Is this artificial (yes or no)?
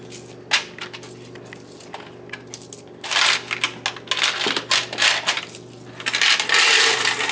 no